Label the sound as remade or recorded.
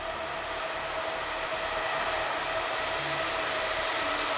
recorded